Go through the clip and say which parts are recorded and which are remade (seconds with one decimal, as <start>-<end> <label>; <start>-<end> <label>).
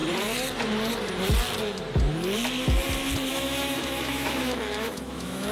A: 0.0-3.3 recorded; 3.3-5.5 remade